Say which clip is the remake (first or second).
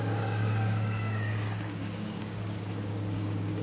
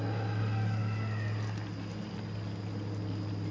first